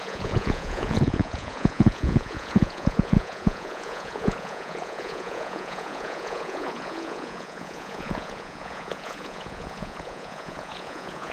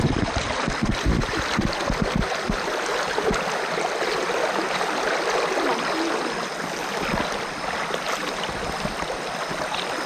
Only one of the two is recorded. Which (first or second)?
second